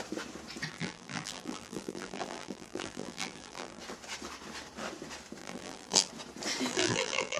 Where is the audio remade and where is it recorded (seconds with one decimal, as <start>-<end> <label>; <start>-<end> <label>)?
0.0-0.7 recorded; 0.7-3.8 remade; 3.8-5.4 recorded; 5.4-6.1 remade; 6.1-6.7 recorded; 6.7-7.4 remade